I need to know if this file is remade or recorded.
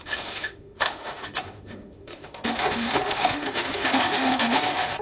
remade